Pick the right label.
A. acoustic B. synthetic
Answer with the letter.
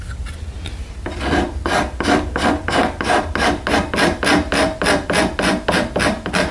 A